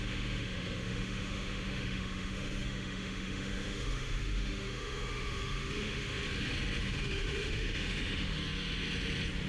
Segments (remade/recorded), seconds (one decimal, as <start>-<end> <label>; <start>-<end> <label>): 0.0-6.2 remade; 6.2-6.8 recorded; 6.8-8.4 remade; 8.4-9.5 recorded